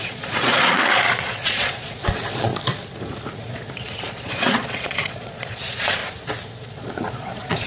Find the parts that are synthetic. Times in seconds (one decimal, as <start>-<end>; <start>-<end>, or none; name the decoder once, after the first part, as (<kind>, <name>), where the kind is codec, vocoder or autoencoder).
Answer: 0.0-2.5 (vocoder, Vocos); 3.4-6.0; 6.6-7.7